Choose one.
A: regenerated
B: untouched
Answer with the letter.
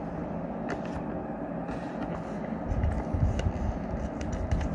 B